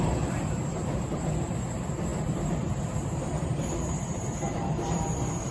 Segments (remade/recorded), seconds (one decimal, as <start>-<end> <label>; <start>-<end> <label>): 0.0-5.5 remade